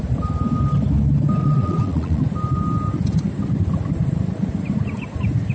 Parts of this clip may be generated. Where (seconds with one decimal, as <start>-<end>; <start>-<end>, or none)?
1.4-2.2